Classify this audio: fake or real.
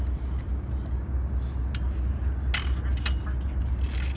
real